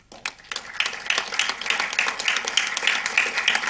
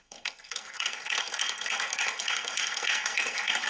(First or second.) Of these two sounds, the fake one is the second